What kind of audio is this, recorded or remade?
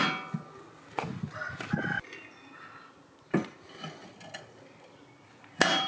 recorded